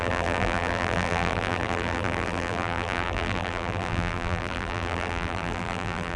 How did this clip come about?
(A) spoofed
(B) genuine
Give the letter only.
A